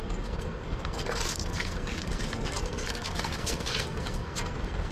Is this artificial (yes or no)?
yes